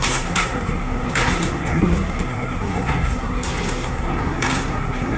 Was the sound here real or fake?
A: fake